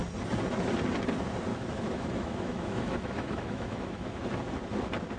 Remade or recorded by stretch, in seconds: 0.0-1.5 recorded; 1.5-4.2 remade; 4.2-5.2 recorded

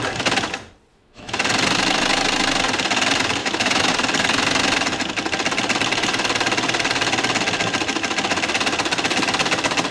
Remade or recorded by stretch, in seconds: 0.0-0.9 recorded; 0.9-1.4 remade; 1.4-3.4 recorded; 3.4-3.9 remade; 3.9-9.9 recorded

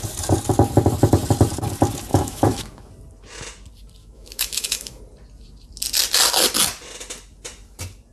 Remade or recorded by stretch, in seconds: 0.0-2.1 recorded; 2.1-2.9 remade; 2.9-4.0 recorded; 4.0-5.0 remade; 5.0-8.1 recorded